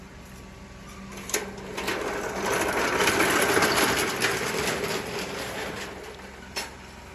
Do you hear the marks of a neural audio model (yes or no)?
no